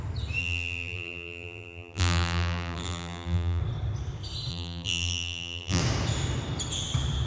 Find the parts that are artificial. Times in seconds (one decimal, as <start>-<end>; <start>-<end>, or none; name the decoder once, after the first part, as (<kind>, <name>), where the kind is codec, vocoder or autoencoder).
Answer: 0.4-3.6 (vocoder, BigVGAN v2); 4.5-5.8